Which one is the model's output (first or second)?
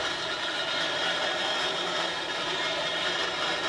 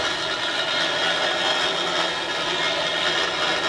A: first